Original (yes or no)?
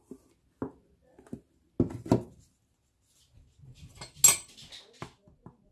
yes